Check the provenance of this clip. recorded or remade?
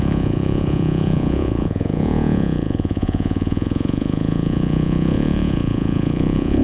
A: remade